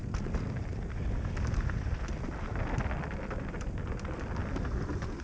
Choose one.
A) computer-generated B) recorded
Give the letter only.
B